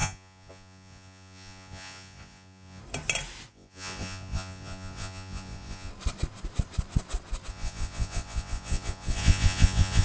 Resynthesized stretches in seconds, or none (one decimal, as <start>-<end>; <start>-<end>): 0.0-2.8; 3.5-5.9; 7.5-10.0